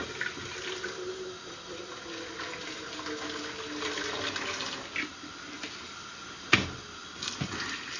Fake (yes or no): no